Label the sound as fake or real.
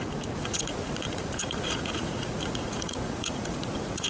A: fake